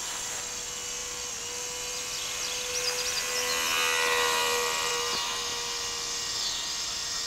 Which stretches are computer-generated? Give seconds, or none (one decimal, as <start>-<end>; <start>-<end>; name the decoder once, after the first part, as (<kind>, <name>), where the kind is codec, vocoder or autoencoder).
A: 1.0-2.7 (vocoder, BigVGAN v2); 4.4-4.9; 5.5-7.3